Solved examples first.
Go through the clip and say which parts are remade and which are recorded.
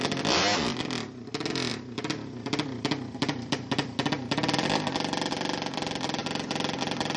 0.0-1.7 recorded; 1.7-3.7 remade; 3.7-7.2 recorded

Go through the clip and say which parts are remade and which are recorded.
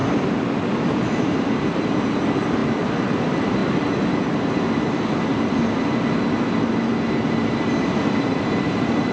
0.0-0.6 recorded; 0.6-3.6 remade; 3.6-8.2 recorded; 8.2-9.1 remade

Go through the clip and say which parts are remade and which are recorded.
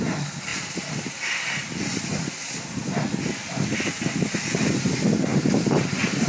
0.0-0.5 recorded; 0.5-1.2 remade; 1.2-5.3 recorded; 5.3-6.3 remade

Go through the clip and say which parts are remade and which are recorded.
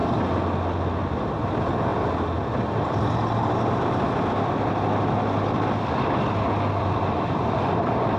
0.0-1.0 recorded; 1.0-1.9 remade; 1.9-6.8 recorded; 6.8-8.2 remade